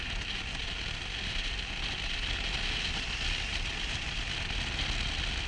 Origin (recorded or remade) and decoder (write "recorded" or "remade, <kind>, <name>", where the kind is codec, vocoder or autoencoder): recorded